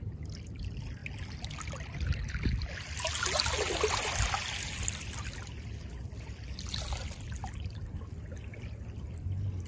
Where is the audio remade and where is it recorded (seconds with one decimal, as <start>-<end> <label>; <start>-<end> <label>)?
0.0-9.7 recorded